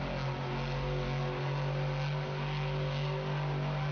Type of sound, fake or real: real